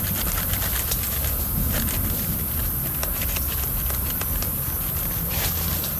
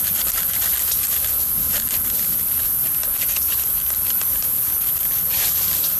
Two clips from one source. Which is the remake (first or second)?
second